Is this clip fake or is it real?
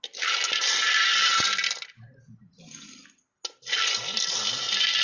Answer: real